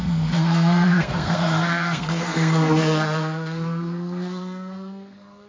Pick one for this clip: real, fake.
fake